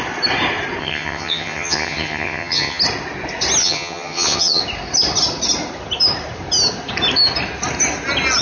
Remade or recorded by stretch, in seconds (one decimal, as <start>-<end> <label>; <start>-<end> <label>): 0.0-0.8 recorded; 0.8-2.8 remade; 2.8-3.6 recorded; 3.6-4.6 remade; 4.6-8.4 recorded